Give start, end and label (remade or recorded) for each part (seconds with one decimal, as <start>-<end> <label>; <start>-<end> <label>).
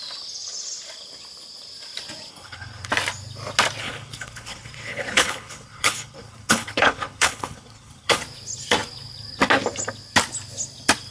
0.0-2.3 recorded; 2.3-2.9 remade; 2.9-3.8 recorded; 3.8-8.2 remade; 8.2-11.1 recorded